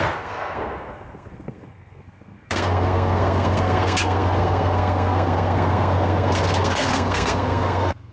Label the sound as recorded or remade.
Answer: remade